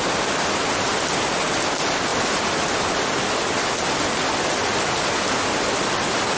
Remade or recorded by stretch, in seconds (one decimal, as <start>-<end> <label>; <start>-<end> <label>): 0.0-6.4 recorded